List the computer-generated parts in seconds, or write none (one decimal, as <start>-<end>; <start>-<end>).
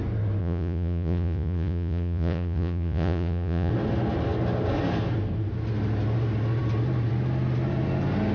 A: 0.4-3.7